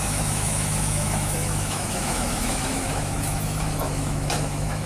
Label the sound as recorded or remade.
remade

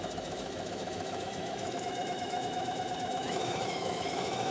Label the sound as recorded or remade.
remade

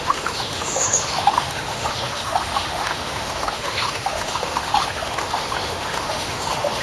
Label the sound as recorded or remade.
remade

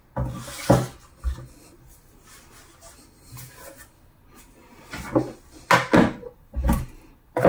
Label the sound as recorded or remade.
recorded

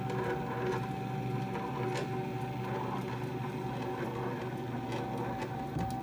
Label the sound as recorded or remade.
recorded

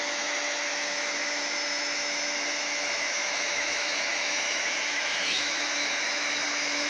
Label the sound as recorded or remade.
remade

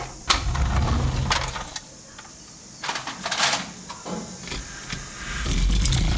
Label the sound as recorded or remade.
recorded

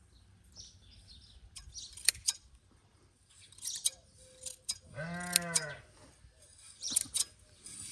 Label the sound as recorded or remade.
recorded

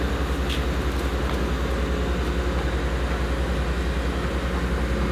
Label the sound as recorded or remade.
recorded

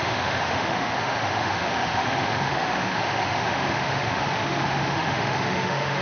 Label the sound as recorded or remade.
remade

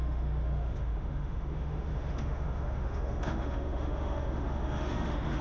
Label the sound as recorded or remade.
remade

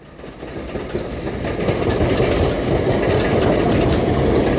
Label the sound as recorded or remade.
recorded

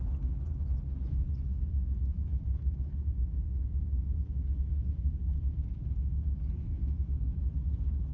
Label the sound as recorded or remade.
remade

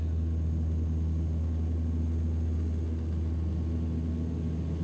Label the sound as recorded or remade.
recorded